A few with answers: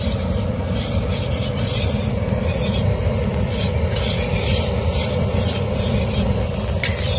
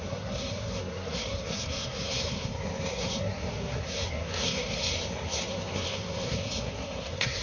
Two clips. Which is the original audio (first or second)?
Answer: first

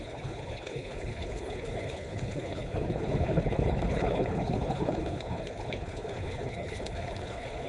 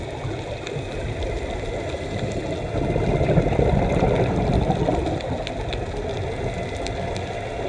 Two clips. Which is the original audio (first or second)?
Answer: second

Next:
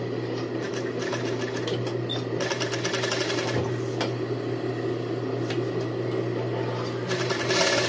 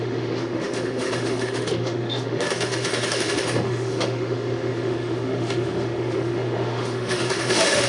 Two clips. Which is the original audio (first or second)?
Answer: first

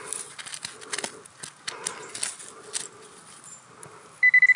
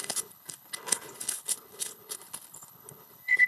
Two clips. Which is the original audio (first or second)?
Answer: first